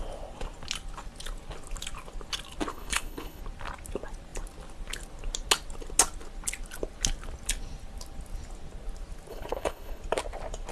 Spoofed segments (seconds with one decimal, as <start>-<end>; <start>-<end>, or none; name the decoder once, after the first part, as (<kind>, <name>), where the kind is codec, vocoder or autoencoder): 2.7-3.4 (codec, HILCodec); 9.3-10.0